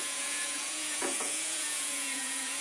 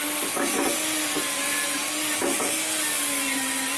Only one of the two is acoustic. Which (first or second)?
second